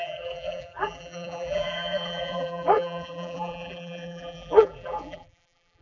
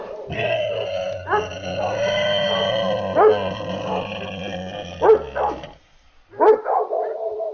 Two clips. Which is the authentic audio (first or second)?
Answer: second